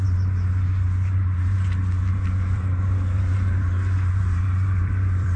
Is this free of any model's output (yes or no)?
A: no